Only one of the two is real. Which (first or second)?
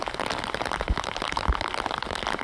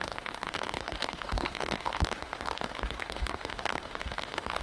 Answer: first